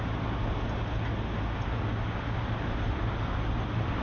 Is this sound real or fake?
real